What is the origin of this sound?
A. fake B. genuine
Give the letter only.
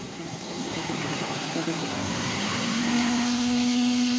A